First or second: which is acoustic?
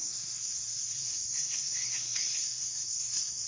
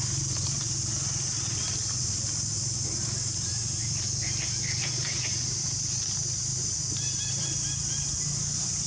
second